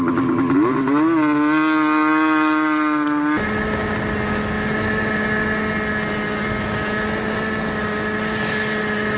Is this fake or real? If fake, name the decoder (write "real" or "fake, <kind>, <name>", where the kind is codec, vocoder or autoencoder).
real